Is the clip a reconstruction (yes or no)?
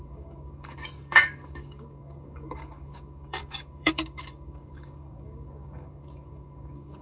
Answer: yes